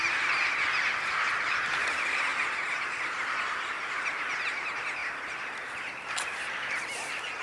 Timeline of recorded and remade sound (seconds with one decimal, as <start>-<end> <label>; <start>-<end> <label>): 0.0-7.4 recorded